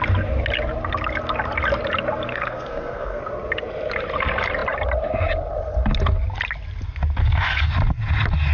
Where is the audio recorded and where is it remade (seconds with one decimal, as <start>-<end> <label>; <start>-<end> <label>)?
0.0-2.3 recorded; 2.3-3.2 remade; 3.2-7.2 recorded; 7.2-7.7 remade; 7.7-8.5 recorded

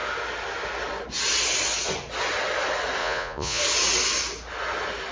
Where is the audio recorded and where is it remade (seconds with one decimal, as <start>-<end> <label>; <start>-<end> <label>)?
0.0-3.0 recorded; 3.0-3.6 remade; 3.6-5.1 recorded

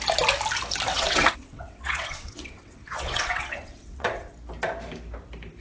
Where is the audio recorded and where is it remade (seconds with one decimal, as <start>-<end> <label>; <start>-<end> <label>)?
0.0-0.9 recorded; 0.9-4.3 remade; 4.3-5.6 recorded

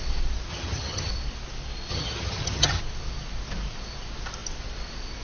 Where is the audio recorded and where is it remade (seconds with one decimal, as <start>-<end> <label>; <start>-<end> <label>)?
0.0-0.5 recorded; 0.5-1.1 remade; 1.1-1.9 recorded; 1.9-2.8 remade; 2.8-5.2 recorded

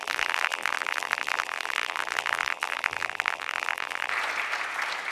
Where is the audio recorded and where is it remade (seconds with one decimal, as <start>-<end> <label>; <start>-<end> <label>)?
0.0-4.1 remade; 4.1-5.1 recorded